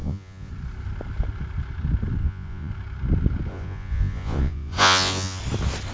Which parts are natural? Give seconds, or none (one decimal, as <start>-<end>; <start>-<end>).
0.5-2.2; 2.7-3.5; 5.4-5.9